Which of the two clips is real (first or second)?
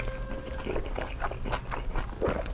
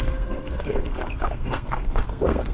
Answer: first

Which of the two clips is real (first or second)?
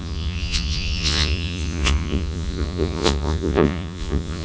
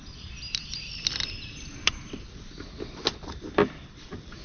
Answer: second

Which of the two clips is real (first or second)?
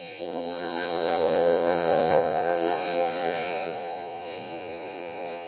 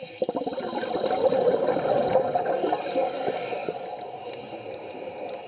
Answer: second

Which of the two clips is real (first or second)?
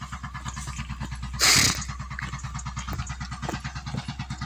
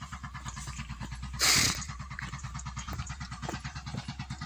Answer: first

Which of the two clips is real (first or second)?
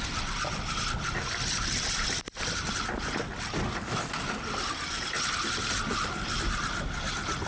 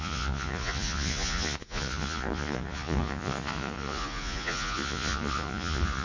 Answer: first